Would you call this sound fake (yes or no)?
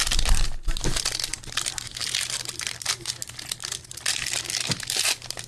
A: no